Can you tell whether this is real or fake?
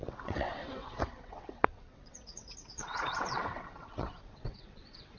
fake